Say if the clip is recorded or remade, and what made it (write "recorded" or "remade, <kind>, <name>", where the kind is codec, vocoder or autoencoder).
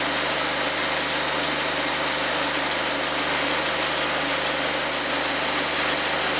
recorded